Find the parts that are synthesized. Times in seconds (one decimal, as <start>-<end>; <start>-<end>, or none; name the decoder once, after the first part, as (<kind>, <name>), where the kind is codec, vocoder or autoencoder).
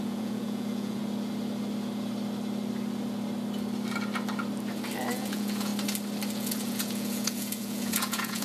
0.0-1.0 (vocoder, Vocos); 5.1-5.7; 6.3-8.4